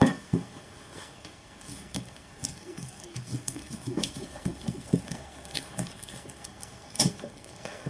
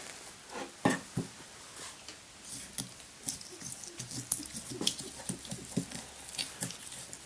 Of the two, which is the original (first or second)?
second